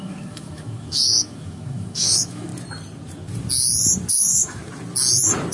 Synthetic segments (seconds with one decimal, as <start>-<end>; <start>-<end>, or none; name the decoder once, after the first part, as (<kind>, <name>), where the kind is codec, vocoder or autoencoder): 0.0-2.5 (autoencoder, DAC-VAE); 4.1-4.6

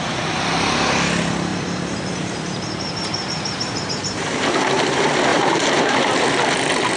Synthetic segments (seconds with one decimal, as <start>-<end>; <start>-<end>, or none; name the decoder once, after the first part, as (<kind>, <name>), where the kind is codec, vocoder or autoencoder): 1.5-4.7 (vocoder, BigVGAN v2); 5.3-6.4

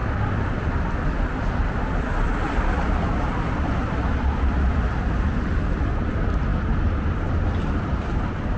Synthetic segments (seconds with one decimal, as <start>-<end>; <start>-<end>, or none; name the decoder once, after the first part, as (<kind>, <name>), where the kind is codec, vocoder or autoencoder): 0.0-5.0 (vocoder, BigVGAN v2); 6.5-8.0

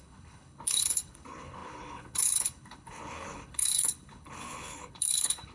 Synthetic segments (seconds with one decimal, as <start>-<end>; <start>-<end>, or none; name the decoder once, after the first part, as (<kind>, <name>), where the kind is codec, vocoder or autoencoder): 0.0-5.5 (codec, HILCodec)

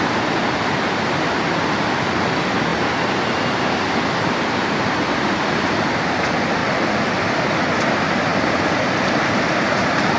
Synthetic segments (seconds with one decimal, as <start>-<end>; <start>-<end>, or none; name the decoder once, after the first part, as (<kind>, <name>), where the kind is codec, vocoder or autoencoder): none